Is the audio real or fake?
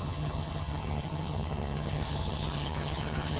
fake